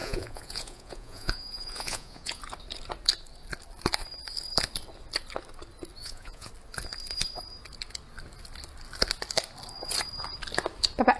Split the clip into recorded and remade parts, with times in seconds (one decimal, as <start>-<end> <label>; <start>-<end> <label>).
0.0-2.4 remade; 2.4-6.0 recorded; 6.0-6.5 remade; 6.5-11.2 recorded